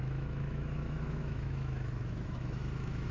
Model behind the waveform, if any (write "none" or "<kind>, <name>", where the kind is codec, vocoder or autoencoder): autoencoder, DAC-VAE